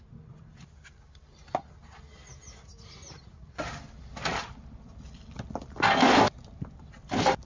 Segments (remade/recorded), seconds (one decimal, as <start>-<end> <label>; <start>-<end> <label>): 0.0-7.5 recorded